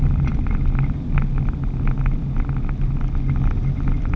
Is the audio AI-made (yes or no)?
no